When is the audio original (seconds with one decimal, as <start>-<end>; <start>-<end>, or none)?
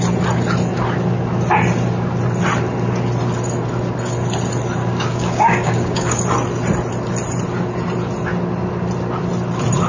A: 0.0-4.8; 6.2-9.9